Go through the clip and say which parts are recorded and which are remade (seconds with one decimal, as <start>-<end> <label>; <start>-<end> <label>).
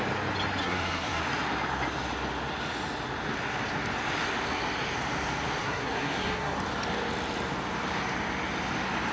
0.0-0.6 recorded; 0.6-1.2 remade; 1.2-5.6 recorded; 5.6-6.6 remade; 6.6-9.1 recorded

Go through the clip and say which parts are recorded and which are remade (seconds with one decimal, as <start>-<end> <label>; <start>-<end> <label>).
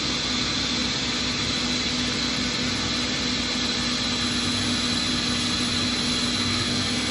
0.0-6.5 recorded; 6.5-7.1 remade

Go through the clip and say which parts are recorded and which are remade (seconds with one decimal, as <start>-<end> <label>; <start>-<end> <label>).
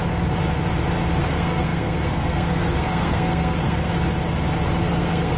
0.0-1.2 recorded; 1.2-3.9 remade; 3.9-4.8 recorded; 4.8-5.4 remade